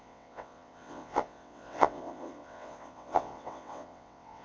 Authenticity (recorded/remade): remade